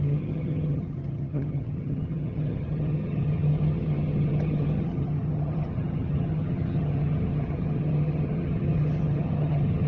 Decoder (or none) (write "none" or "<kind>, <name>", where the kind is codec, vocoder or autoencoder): vocoder, HiFi-GAN